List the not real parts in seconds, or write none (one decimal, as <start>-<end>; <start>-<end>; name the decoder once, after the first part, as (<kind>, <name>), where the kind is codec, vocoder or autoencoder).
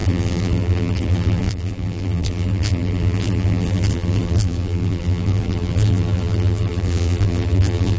0.0-8.0 (vocoder, BigVGAN v2)